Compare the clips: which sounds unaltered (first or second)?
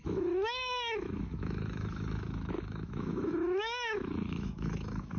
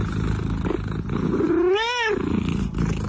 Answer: second